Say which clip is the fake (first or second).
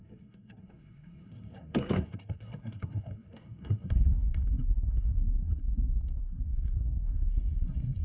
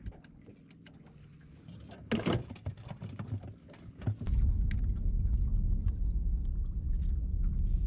first